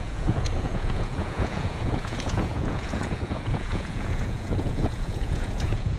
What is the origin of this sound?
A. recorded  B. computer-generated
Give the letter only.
B